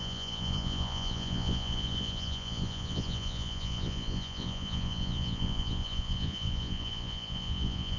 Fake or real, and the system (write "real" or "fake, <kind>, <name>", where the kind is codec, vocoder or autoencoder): fake, vocoder, Vocos